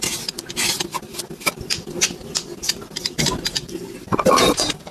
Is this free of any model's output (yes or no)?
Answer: no